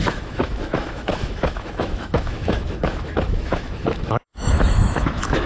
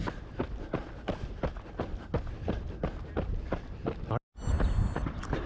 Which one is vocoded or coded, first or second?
first